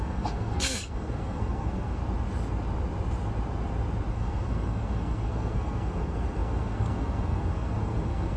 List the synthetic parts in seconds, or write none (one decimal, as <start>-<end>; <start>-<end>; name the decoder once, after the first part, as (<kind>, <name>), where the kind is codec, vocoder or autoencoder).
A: 0.0-2.0 (codec, SNAC); 4.1-8.4